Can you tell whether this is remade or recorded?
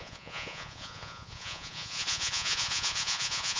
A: remade